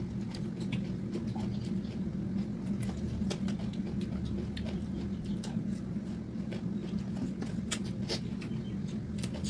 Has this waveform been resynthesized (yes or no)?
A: no